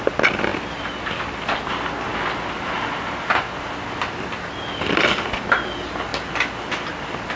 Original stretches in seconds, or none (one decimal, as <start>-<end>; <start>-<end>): 0.0-7.4

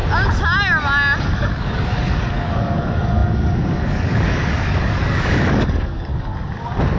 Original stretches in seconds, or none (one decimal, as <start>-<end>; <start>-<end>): 0.0-1.2; 6.3-7.0